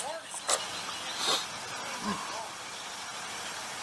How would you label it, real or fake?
real